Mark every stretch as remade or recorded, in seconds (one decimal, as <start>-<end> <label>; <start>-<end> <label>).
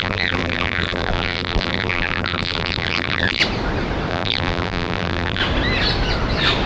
0.0-3.4 remade; 3.4-4.1 recorded; 4.1-5.4 remade; 5.4-6.7 recorded